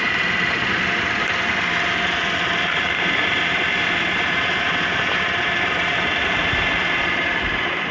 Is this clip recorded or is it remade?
remade